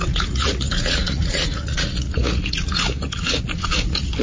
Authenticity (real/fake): fake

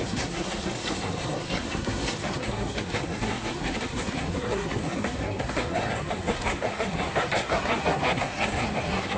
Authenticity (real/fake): fake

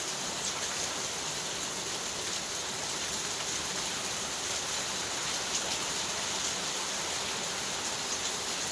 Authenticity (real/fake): real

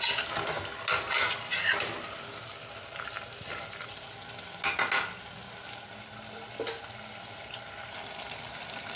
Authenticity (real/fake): real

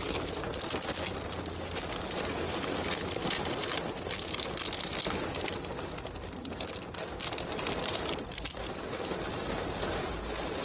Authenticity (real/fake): real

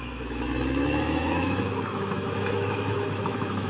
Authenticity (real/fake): fake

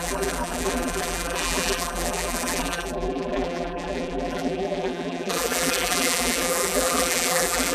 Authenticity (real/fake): fake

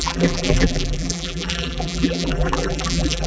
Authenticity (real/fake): fake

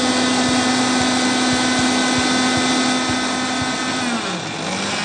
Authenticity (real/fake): real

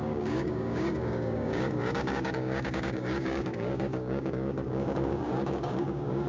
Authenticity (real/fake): fake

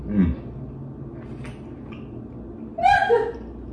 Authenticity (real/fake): real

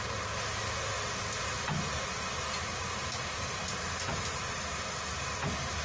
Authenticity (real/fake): real